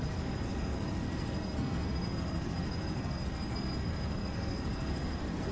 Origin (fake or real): fake